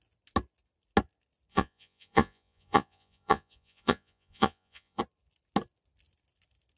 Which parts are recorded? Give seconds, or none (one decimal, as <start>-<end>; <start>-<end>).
0.0-1.5; 5.0-6.8